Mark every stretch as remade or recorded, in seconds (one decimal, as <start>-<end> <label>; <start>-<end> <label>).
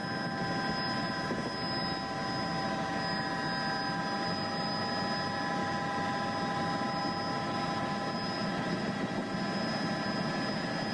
0.0-10.9 recorded